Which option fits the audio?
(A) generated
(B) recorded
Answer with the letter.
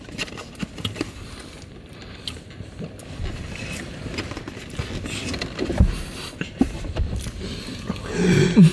B